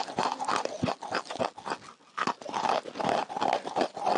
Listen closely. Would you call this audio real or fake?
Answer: real